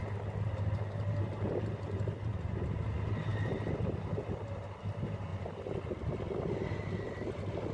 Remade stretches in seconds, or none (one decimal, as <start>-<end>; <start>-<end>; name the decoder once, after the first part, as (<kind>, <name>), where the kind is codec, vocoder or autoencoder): none

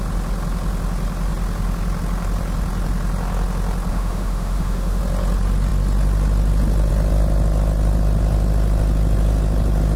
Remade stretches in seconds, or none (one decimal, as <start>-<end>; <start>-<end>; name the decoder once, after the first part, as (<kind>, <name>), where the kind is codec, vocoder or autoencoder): 3.9-5.0 (autoencoder, DAC-VAE)